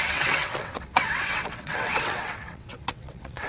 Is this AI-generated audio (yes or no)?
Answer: yes